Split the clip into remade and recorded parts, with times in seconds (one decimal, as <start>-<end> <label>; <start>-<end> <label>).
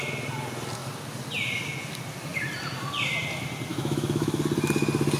0.0-3.7 recorded; 3.7-4.4 remade; 4.4-5.2 recorded